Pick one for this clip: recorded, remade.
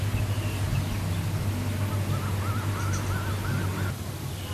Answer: recorded